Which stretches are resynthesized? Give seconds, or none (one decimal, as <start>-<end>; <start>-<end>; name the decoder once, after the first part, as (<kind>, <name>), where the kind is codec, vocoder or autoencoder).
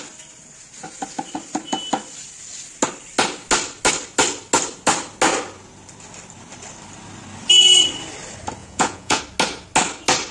8.6-9.2 (vocoder, Vocos)